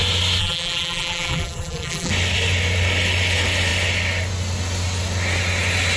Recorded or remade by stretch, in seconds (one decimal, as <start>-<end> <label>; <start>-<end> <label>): 0.0-0.4 recorded; 0.4-2.1 remade; 2.1-6.0 recorded

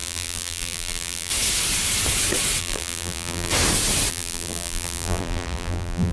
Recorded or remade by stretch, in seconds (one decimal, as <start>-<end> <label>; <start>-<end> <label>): 0.0-1.3 remade; 1.3-2.6 recorded; 2.6-3.5 remade; 3.5-4.1 recorded; 4.1-6.1 remade

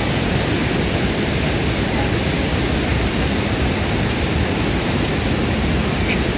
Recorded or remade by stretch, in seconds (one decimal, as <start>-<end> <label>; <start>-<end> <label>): 0.0-0.6 recorded; 0.6-1.3 remade; 1.3-2.9 recorded; 2.9-5.4 remade; 5.4-6.4 recorded

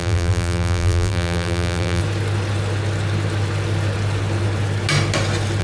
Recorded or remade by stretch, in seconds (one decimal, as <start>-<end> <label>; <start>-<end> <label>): 0.0-2.0 remade; 2.0-5.6 recorded

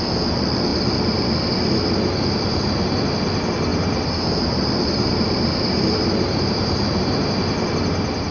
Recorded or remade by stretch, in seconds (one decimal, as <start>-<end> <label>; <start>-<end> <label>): 0.0-3.7 recorded; 3.7-7.4 remade; 7.4-8.3 recorded

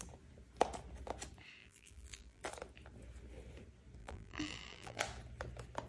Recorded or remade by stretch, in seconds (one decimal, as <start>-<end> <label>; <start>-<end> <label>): 0.0-1.6 recorded; 1.6-2.4 remade; 2.4-4.0 recorded; 4.0-5.0 remade; 5.0-5.9 recorded

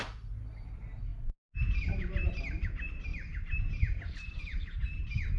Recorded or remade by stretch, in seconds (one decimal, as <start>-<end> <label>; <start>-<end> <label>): 0.0-3.1 recorded; 3.1-5.4 remade

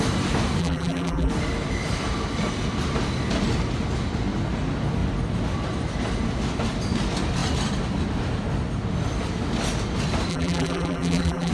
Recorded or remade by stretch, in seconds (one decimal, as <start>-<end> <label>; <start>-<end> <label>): 0.0-0.6 recorded; 0.6-1.3 remade; 1.3-10.3 recorded; 10.3-11.5 remade